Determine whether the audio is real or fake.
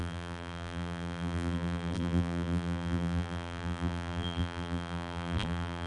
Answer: fake